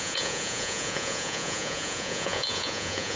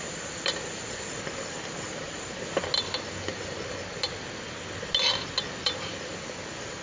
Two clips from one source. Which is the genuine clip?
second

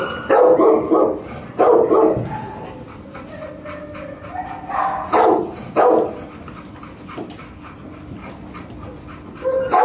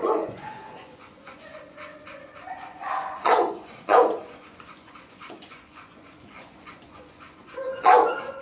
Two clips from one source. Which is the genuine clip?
first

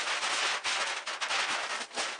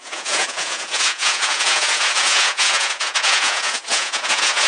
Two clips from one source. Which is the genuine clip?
first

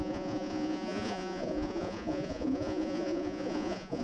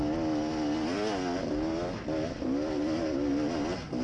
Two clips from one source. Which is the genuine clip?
second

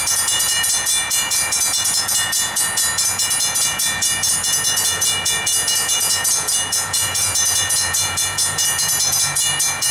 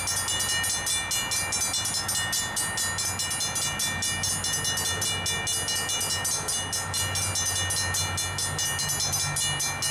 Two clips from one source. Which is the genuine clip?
second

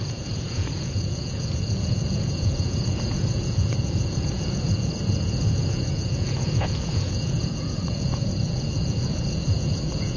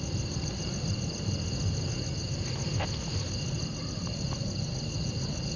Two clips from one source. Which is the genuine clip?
second